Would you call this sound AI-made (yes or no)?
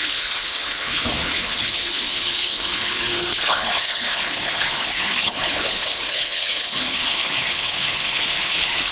yes